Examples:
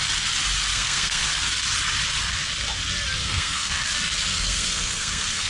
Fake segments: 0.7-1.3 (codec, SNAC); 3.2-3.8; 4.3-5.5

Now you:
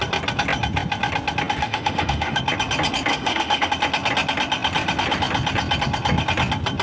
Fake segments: 1.6-2.4 (autoencoder, DAC-VAE); 3.1-3.7

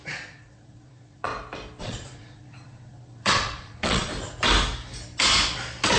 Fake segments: 0.0-1.3 (vocoder, Vocos); 1.8-4.1

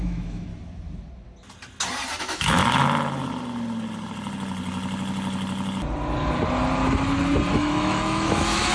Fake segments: 0.0-0.5 (autoencoder, DAC-VAE); 2.2-2.6; 7.5-8.7

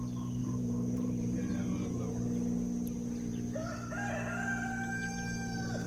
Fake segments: 0.4-1.5 (vocoder, BigVGAN v2)

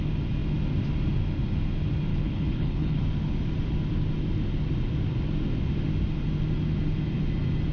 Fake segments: 2.1-3.0 (codec, HILCodec)

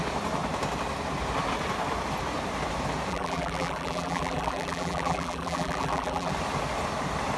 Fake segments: 3.1-6.3 (vocoder, BigVGAN v2)

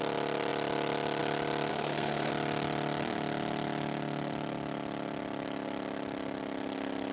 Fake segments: 1.7-2.3 (codec, SNAC)